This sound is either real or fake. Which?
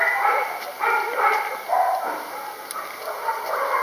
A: real